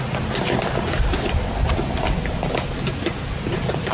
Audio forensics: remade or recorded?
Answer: recorded